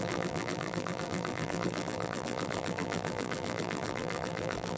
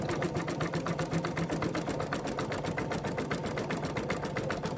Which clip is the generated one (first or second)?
first